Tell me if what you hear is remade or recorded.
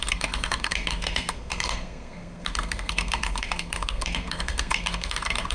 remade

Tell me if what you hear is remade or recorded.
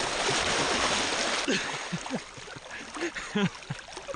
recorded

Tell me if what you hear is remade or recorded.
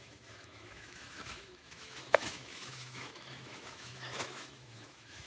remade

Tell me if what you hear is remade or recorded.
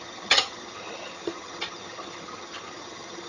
remade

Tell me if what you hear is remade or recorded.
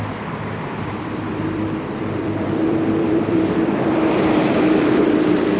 remade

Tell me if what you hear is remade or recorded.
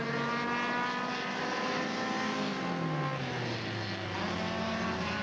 recorded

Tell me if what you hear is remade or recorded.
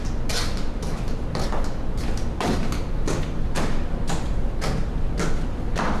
recorded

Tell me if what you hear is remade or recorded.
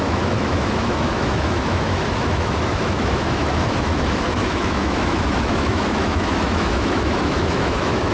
remade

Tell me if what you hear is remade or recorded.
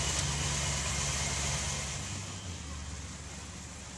recorded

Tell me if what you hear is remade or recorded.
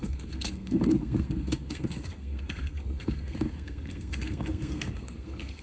remade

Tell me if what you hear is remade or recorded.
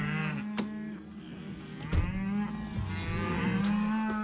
recorded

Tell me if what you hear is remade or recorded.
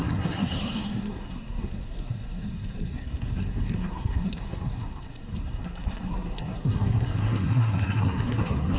remade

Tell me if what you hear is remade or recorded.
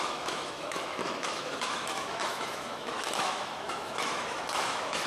remade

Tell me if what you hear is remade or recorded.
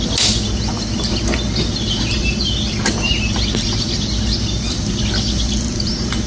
recorded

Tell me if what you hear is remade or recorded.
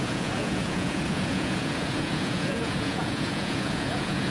remade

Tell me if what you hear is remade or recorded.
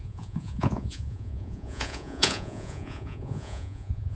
remade